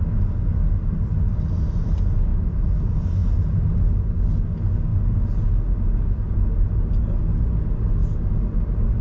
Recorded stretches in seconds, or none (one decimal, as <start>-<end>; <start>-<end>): 0.0-9.0